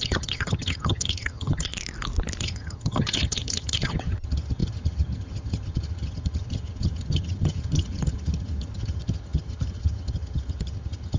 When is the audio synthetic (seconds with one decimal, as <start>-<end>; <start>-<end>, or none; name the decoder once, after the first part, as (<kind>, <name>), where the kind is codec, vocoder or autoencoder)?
0.0-1.7 (vocoder, HiFi-GAN); 2.4-11.2